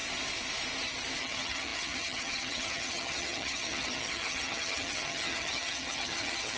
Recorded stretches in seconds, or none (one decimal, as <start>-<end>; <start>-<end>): 0.0-1.2